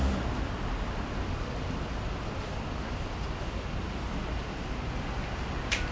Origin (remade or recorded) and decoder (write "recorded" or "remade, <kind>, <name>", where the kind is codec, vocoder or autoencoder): recorded